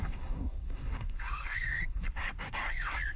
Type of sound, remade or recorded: remade